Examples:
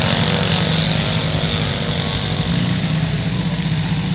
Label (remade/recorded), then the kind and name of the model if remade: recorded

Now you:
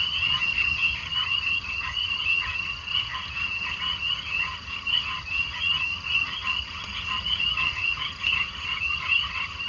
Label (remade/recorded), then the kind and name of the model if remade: remade, vocoder, HiFi-GAN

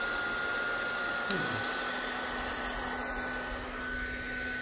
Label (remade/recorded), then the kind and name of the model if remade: recorded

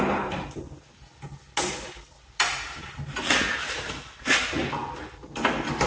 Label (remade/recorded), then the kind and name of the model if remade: recorded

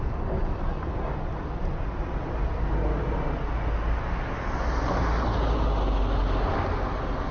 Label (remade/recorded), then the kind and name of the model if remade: recorded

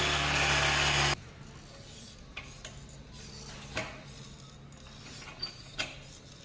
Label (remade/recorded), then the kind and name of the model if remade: recorded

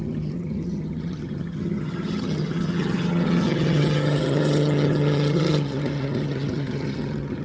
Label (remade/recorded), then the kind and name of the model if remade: remade, vocoder, HiFi-GAN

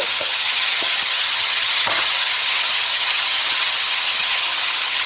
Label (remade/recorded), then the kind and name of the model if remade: remade, vocoder, HiFi-GAN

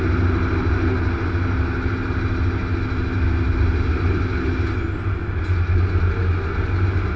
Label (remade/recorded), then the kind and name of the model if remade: recorded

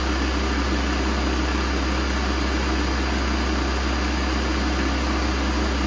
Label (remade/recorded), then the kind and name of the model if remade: recorded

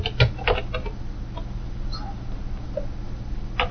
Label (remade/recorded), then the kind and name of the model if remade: recorded